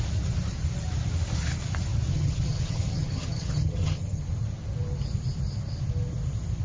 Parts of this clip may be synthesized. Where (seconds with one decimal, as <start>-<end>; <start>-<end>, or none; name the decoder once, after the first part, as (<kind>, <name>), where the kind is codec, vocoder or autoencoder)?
2.1-4.2 (vocoder, HiFi-GAN)

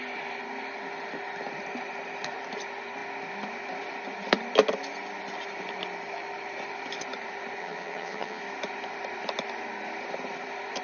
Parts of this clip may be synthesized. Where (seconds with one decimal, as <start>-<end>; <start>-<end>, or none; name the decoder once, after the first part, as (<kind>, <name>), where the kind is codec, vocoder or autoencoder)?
7.6-8.4 (vocoder, HiFi-GAN)

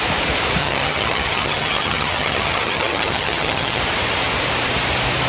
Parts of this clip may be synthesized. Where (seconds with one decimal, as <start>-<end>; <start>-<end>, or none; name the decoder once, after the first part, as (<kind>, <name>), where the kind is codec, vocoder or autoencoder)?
0.6-3.8 (vocoder, HiFi-GAN)

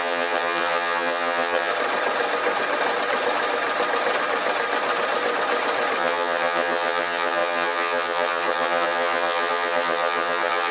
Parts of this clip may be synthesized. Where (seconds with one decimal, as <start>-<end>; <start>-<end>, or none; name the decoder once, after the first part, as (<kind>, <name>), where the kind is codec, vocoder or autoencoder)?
0.0-1.7 (vocoder, HiFi-GAN); 6.0-10.7

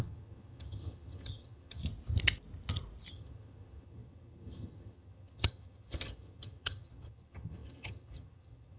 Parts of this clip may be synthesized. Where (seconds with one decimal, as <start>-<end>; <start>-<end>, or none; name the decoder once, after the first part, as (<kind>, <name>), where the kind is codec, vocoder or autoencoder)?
0.0-1.8 (vocoder, HiFi-GAN); 3.1-8.8

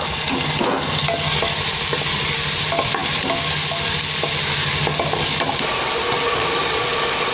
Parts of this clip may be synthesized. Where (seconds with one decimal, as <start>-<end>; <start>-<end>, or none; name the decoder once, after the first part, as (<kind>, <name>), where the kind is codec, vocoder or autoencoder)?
none